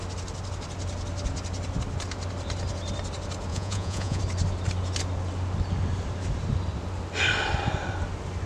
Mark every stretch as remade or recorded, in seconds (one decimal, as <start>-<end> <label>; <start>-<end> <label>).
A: 0.0-3.5 recorded; 3.5-4.2 remade; 4.2-8.5 recorded